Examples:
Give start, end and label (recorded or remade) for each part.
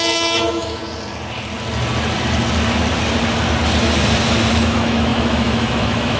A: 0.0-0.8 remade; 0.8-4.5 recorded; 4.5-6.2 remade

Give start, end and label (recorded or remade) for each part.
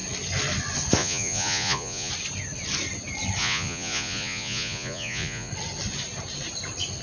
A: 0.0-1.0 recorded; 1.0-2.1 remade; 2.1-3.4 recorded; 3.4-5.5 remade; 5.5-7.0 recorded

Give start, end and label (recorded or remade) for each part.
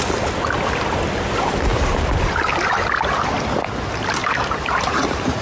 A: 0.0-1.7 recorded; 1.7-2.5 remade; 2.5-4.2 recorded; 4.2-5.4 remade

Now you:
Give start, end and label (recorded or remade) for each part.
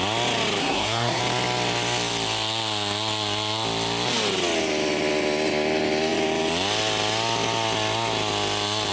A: 0.0-0.6 recorded; 0.6-1.2 remade; 1.2-8.9 recorded